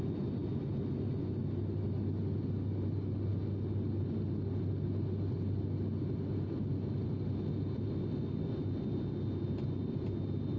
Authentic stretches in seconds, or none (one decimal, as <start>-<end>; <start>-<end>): 0.0-10.6